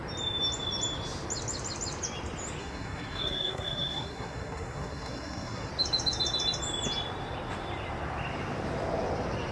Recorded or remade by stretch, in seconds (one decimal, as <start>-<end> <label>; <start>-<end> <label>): 0.0-2.6 recorded; 2.6-5.7 remade; 5.7-9.5 recorded